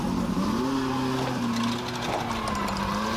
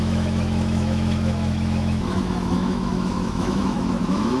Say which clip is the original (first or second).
first